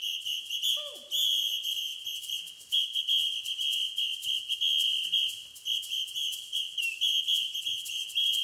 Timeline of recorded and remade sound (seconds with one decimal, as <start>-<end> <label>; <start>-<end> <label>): 0.0-8.4 recorded